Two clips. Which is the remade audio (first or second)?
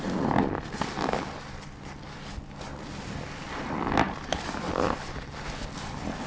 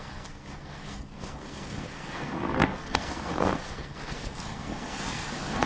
second